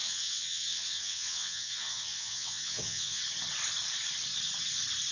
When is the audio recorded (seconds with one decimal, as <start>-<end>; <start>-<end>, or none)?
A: 3.2-5.1